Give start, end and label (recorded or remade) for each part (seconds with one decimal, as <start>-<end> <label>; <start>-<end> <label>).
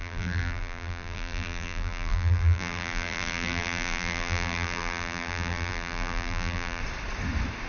0.0-6.8 remade; 6.8-7.7 recorded